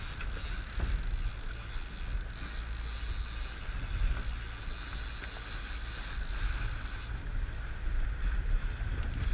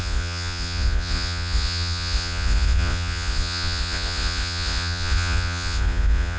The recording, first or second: first